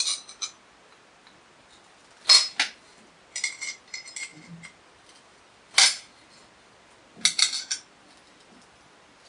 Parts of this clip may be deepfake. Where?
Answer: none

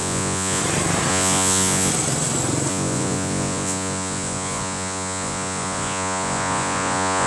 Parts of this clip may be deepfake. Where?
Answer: 0.0-0.6 (vocoder, Vocos); 1.1-1.9; 2.7-7.3